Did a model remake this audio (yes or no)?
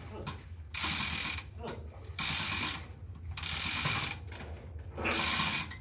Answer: no